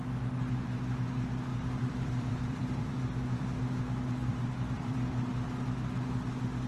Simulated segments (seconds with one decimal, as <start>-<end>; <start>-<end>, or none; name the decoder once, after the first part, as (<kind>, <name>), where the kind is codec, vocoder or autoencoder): 1.5-2.9 (vocoder, BigVGAN v2); 4.3-5.3